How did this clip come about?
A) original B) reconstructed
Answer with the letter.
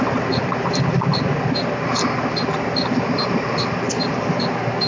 A